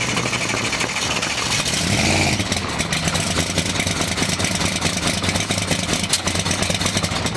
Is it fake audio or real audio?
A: real